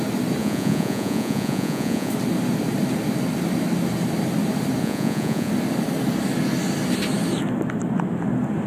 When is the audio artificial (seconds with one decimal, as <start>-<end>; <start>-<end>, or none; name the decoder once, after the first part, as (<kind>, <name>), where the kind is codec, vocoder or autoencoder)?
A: 0.4-2.1 (vocoder, Vocos); 4.8-5.5